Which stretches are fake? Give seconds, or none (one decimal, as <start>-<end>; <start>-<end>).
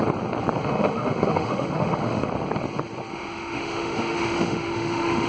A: 0.6-2.3; 3.1-5.3